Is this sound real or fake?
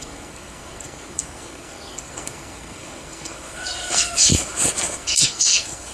fake